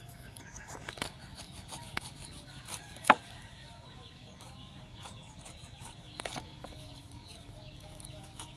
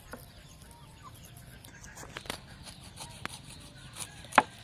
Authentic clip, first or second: second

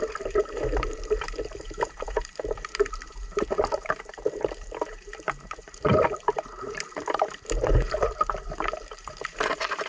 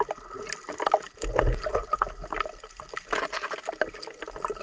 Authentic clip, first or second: second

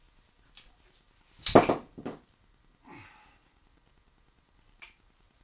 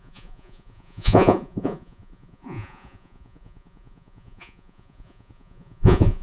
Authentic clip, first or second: first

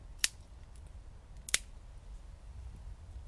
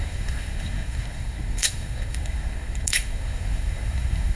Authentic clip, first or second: first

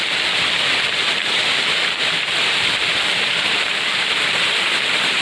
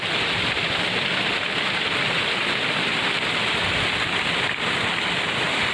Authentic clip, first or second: second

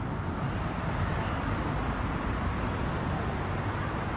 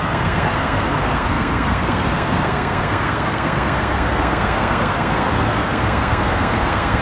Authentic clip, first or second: first